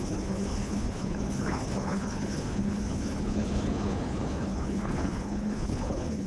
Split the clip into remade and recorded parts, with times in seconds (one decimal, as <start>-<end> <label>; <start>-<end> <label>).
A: 0.0-6.3 remade

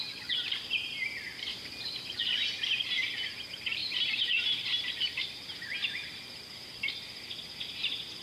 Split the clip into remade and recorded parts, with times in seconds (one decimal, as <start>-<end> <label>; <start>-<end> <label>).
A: 0.0-1.5 recorded; 1.5-2.2 remade; 2.2-3.8 recorded; 3.8-5.2 remade; 5.2-8.2 recorded

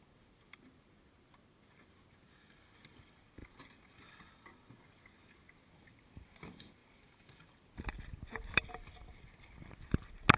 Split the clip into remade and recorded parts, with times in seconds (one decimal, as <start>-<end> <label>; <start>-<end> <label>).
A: 0.0-3.4 recorded; 3.4-4.3 remade; 4.3-10.4 recorded

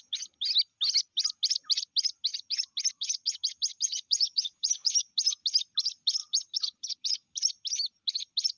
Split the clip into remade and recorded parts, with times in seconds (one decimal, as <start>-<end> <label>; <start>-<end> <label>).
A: 0.0-3.7 recorded; 3.7-4.7 remade; 4.7-8.6 recorded